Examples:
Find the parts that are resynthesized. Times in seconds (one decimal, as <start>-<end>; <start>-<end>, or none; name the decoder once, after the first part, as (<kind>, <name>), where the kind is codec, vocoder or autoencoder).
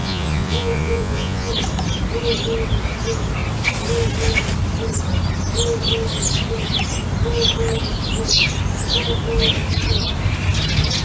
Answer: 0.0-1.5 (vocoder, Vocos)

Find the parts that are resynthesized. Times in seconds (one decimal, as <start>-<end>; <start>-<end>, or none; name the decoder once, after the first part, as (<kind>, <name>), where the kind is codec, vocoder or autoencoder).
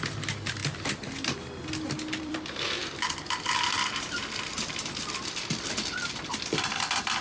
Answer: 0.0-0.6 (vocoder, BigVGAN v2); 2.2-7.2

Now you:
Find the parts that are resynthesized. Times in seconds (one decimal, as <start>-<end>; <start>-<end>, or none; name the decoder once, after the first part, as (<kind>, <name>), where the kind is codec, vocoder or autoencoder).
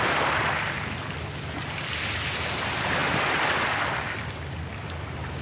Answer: none